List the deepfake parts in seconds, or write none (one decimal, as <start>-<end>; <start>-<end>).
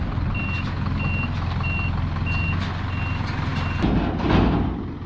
none